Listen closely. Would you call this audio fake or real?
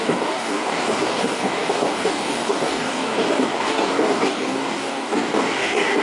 fake